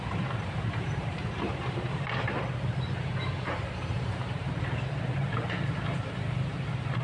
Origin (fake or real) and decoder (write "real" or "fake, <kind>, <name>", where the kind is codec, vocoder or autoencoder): fake, vocoder, BigVGAN v2